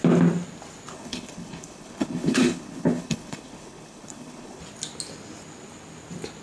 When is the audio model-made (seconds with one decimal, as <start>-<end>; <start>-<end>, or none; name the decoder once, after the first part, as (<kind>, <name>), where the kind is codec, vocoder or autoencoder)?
0.9-4.6 (codec, HILCodec)